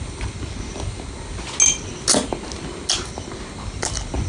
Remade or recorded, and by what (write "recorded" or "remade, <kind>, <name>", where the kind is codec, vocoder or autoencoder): recorded